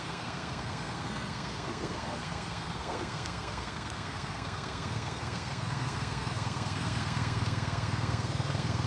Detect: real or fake fake